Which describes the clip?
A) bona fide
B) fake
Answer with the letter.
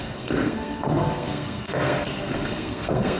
B